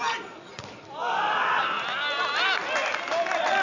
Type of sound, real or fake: real